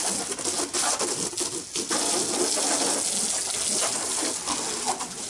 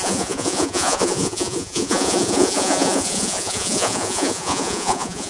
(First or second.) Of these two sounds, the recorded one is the first